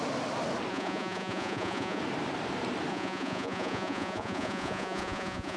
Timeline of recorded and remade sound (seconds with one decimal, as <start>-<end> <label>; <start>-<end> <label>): 0.0-0.7 recorded; 0.7-2.0 remade; 2.0-2.9 recorded; 2.9-5.6 remade